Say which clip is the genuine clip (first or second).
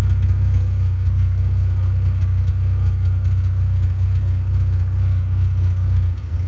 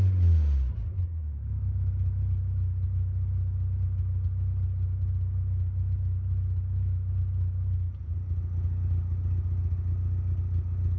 second